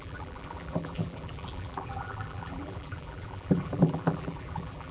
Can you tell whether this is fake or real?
fake